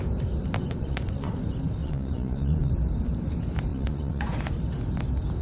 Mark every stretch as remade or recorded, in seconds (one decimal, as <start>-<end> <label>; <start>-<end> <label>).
0.0-0.6 recorded; 0.6-1.3 remade; 1.3-1.8 recorded; 1.8-2.7 remade; 2.7-3.7 recorded; 3.7-4.6 remade; 4.6-5.4 recorded